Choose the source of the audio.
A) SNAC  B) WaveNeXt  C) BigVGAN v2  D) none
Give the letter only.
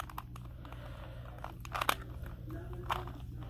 D